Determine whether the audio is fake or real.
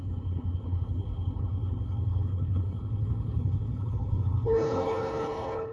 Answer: fake